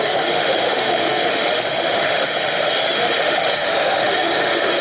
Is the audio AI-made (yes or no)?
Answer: yes